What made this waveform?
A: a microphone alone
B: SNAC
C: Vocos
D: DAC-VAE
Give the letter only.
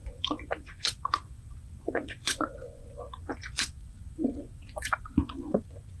C